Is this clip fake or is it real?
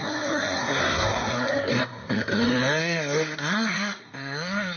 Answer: fake